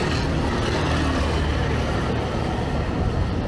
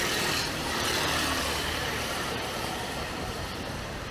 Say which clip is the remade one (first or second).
second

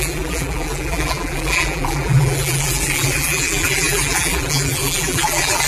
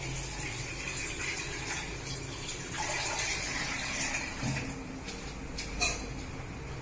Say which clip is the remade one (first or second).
first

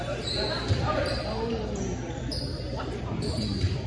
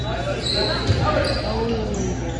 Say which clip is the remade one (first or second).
first